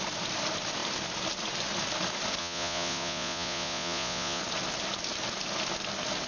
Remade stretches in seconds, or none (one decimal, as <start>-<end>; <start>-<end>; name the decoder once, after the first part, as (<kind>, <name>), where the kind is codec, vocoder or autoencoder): 2.4-4.4 (vocoder, Vocos)